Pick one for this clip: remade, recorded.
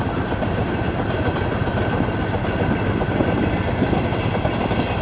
recorded